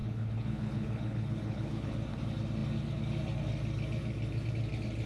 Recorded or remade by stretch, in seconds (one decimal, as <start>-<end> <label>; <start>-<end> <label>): 0.0-1.9 remade; 1.9-5.1 recorded